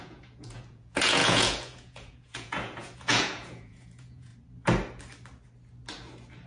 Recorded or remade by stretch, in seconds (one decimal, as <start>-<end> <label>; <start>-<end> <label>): 0.0-4.3 remade; 4.3-6.5 recorded